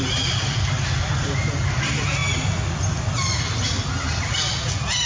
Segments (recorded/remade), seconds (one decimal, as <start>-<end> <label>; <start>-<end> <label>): 0.0-5.1 recorded